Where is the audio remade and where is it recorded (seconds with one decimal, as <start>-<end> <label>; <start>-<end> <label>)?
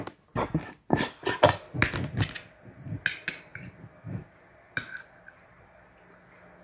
0.0-3.5 recorded; 3.5-6.0 remade; 6.0-6.6 recorded